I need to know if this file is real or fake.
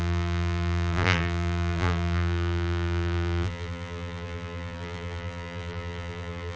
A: fake